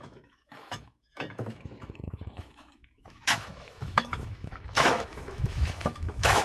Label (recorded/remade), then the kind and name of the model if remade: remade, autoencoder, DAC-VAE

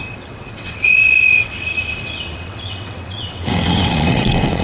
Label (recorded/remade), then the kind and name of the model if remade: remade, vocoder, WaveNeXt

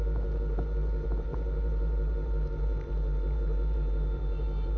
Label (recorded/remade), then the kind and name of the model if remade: remade, vocoder, BigVGAN v2